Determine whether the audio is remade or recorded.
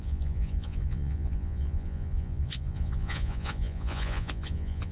remade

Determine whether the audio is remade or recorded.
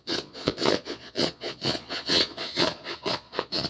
remade